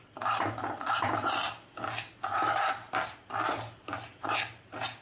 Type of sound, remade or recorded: recorded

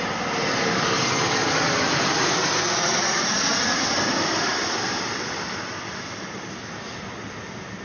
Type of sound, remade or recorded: recorded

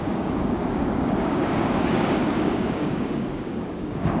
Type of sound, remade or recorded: remade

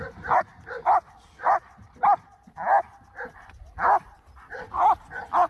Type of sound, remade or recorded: recorded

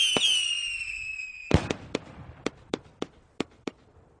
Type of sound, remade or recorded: recorded